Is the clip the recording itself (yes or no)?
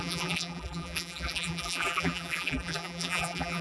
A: no